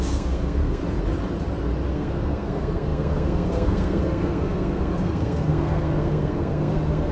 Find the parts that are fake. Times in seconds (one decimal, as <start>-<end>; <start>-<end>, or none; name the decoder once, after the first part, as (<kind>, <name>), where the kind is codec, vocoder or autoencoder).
0.0-0.8 (codec, SNAC); 1.9-7.1